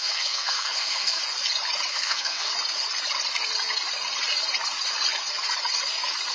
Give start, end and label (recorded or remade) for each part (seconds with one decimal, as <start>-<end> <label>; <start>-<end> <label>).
0.0-1.2 remade; 1.2-1.9 recorded; 1.9-2.5 remade; 2.5-6.3 recorded